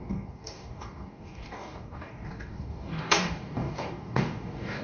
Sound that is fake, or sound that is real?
fake